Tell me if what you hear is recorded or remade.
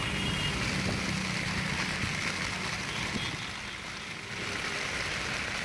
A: recorded